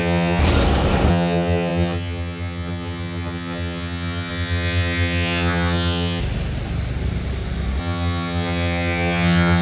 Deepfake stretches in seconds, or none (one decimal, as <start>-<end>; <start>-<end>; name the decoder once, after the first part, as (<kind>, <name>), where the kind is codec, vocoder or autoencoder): 0.0-0.4 (vocoder, HiFi-GAN); 1.1-6.2; 7.8-9.6